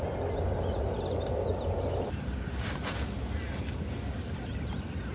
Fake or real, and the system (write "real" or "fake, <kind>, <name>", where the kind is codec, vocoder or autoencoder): real